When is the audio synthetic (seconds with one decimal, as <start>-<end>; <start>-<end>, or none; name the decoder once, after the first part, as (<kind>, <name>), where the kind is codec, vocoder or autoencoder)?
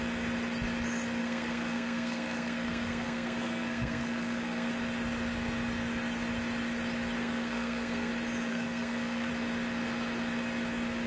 1.2-4.7 (codec, SNAC); 7.2-8.1; 8.5-9.3